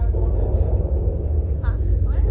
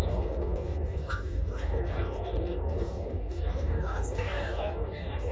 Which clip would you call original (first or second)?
first